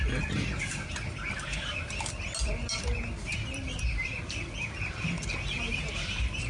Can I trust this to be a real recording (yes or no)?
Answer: yes